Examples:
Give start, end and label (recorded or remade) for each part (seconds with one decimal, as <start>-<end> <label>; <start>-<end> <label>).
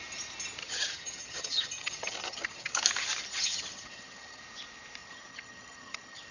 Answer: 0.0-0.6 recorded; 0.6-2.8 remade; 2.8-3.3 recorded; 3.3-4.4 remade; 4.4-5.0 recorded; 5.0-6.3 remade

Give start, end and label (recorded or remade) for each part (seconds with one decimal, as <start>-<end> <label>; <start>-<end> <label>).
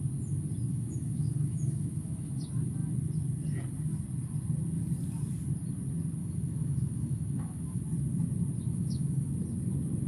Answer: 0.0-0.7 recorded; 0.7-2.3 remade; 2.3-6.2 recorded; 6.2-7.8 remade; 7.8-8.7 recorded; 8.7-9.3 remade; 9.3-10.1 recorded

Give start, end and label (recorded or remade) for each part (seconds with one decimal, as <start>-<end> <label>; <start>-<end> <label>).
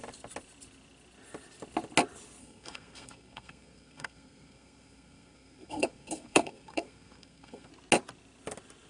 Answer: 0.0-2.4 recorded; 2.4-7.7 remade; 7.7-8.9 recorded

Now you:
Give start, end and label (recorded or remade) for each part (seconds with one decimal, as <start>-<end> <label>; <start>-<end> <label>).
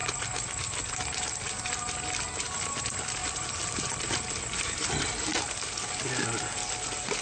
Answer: 0.0-7.2 recorded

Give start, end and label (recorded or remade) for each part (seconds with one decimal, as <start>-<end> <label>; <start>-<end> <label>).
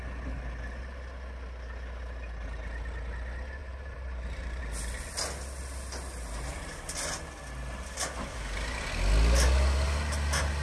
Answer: 0.0-3.6 recorded; 3.6-4.6 remade; 4.6-10.6 recorded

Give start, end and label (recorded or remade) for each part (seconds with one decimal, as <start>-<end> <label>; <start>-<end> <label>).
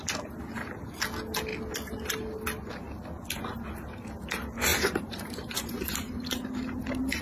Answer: 0.0-4.7 recorded; 4.7-7.2 remade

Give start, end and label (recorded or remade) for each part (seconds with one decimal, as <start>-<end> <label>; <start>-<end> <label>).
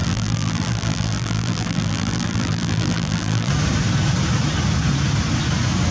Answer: 0.0-3.5 remade; 3.5-5.9 recorded